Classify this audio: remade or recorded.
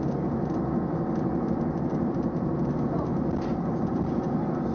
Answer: recorded